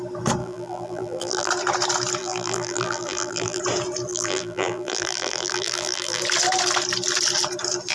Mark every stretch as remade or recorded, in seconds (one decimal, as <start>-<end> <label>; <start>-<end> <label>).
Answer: 0.0-0.4 recorded; 0.4-1.5 remade; 1.5-2.2 recorded; 2.2-3.6 remade; 3.6-4.1 recorded; 4.1-6.2 remade; 6.2-7.9 recorded